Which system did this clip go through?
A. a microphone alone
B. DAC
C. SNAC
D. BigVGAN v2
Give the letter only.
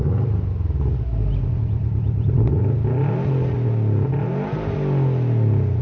A